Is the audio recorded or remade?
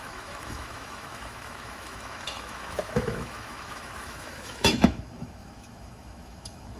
remade